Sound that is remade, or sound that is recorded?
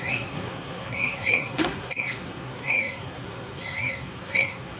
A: remade